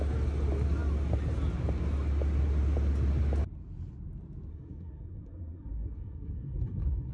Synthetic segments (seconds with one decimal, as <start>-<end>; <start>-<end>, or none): 4.5-7.1